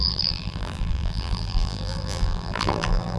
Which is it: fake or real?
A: fake